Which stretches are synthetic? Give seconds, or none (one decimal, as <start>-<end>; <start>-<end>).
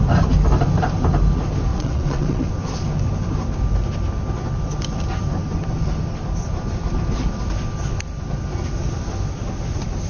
1.7-2.5